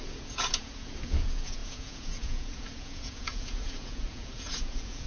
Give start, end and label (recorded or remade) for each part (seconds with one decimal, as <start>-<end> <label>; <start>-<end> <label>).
0.0-5.1 remade